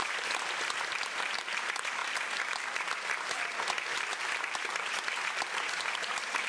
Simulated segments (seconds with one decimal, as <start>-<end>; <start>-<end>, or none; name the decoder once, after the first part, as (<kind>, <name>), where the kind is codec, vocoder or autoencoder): none

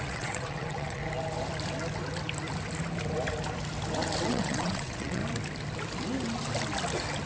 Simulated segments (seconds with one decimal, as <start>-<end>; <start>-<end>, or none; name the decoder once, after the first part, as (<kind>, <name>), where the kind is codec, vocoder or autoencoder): 0.0-1.0 (vocoder, WaveNeXt); 4.3-5.2